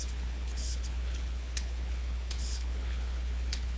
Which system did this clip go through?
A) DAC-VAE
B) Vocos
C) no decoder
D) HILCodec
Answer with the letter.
D